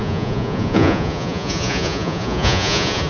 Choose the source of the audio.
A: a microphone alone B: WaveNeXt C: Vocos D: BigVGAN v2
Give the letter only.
C